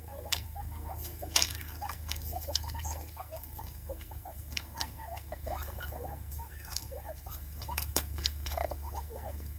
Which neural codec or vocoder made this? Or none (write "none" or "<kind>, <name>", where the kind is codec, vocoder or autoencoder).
codec, SNAC